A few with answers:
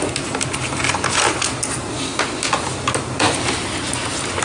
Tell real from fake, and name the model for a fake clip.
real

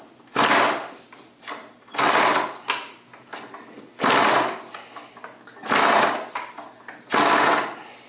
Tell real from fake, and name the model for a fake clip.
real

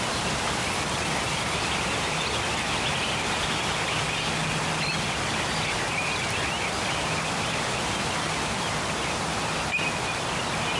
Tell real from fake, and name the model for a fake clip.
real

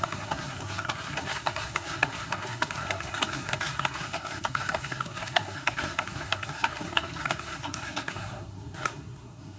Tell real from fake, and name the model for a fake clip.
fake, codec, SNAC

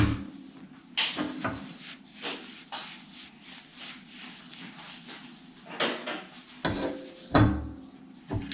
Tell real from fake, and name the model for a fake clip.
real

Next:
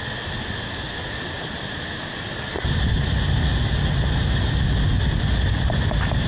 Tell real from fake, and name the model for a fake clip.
real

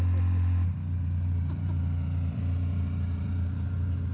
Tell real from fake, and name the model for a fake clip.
real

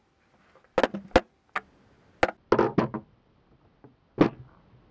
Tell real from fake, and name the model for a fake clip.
real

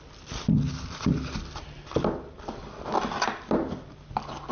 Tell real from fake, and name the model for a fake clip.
real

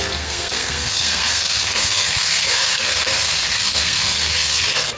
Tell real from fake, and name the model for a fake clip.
fake, codec, SNAC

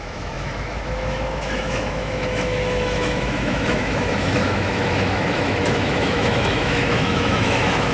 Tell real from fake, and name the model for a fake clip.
fake, autoencoder, DAC-VAE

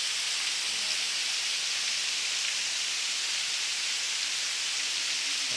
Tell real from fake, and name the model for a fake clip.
real